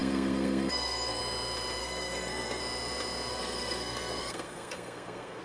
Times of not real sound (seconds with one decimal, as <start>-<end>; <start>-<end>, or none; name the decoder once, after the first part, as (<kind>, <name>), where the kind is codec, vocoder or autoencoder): 0.0-1.2 (codec, SNAC); 1.8-2.6; 3.3-5.4

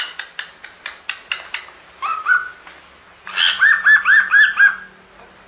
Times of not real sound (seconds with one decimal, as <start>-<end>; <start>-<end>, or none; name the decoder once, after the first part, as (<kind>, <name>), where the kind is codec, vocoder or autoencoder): none

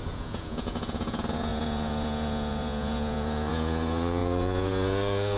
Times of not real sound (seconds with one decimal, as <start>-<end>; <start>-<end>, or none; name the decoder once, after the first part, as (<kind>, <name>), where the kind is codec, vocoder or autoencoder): 0.0-5.4 (vocoder, Vocos)

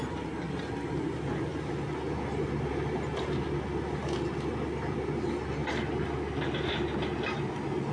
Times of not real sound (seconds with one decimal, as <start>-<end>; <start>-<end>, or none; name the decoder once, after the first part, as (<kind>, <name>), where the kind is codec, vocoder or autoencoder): none

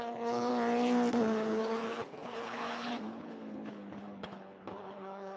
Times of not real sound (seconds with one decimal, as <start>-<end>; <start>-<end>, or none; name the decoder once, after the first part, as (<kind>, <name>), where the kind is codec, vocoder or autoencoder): 0.0-0.5 (codec, HILCodec); 1.1-5.4

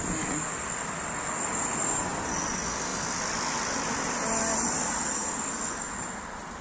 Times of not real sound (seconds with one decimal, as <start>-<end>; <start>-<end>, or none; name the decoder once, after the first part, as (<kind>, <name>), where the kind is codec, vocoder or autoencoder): 1.7-2.4 (vocoder, BigVGAN v2); 2.9-3.5

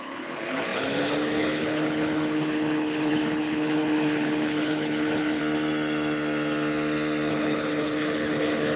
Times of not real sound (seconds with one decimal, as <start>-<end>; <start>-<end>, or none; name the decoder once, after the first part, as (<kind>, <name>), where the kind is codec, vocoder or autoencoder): 0.0-5.4 (codec, HILCodec); 7.3-8.8

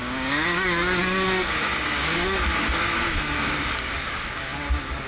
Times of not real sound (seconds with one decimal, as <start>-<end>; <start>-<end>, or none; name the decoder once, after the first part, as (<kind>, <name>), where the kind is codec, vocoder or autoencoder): 0.0-5.1 (codec, DAC)